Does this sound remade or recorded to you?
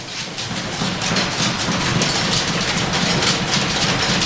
recorded